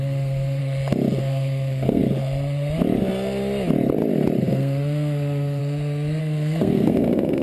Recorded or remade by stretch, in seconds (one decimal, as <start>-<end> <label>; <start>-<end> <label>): 0.0-0.6 remade; 0.6-1.2 recorded; 1.2-2.0 remade; 2.0-4.5 recorded; 4.5-5.6 remade; 5.6-6.2 recorded; 6.2-7.4 remade